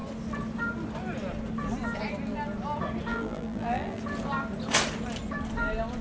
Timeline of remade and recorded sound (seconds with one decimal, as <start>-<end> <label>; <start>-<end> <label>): 0.0-3.1 recorded; 3.1-4.0 remade; 4.0-6.0 recorded